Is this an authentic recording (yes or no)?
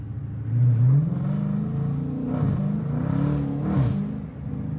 yes